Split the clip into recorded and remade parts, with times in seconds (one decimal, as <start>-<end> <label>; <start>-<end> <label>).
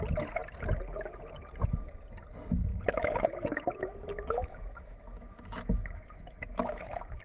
0.0-2.7 recorded; 2.7-7.2 remade